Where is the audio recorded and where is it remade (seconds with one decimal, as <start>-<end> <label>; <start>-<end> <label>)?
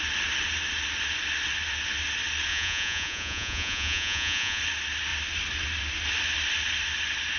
0.0-2.5 recorded; 2.5-4.6 remade; 4.6-7.4 recorded